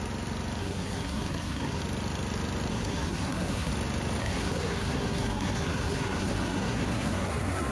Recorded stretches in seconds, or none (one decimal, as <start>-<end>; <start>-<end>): 0.0-0.6; 1.8-2.7; 3.7-4.2